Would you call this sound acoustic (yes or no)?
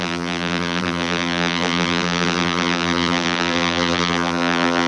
no